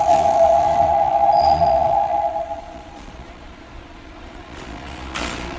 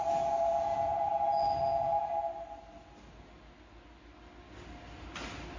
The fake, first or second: first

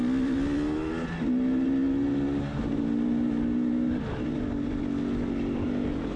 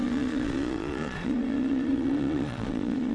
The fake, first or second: second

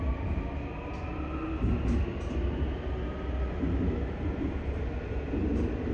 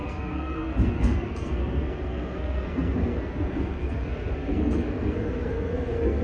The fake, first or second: second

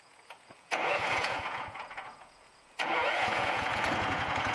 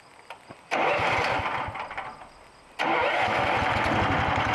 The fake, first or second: first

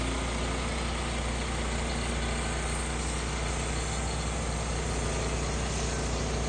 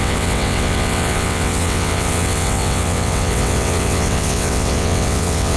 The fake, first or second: second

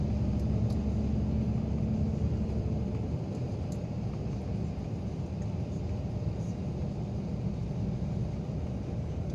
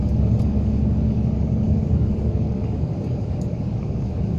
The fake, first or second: second